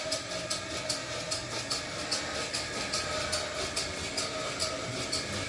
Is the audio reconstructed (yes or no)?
no